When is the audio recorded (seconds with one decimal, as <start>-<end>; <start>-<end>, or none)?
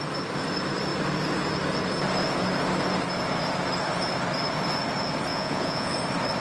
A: 0.0-5.3; 5.9-6.4